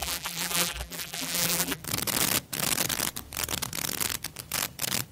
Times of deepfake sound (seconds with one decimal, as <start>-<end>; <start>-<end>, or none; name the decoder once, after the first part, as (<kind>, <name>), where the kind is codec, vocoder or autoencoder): 0.0-1.8 (vocoder, BigVGAN v2)